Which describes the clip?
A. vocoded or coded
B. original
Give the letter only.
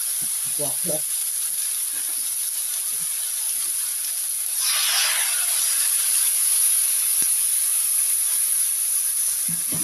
B